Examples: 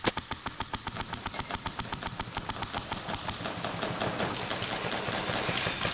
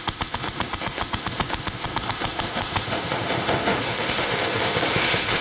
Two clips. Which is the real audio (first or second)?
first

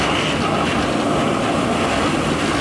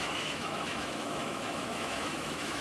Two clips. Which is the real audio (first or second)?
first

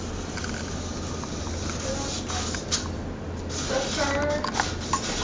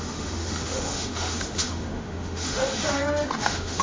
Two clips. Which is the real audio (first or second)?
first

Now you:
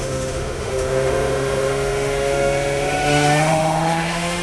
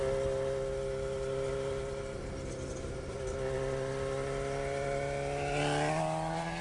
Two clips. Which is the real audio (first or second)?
second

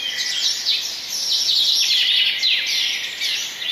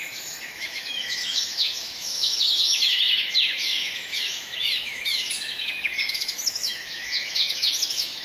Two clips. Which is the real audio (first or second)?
first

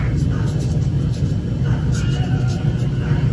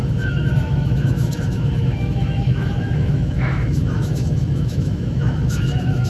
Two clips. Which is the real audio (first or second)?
first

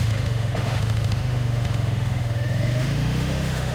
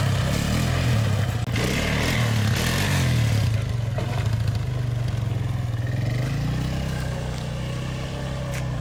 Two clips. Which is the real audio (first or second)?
second